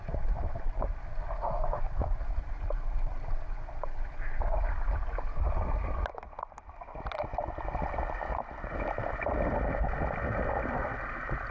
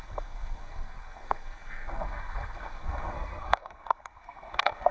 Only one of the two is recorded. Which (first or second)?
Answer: first